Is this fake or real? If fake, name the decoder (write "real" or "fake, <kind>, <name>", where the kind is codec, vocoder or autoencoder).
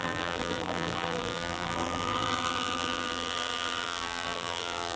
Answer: fake, vocoder, BigVGAN v2